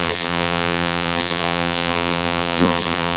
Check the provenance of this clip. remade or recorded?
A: remade